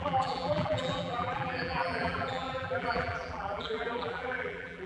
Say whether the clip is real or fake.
fake